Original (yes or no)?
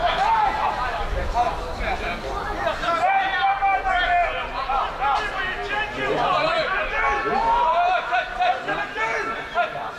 yes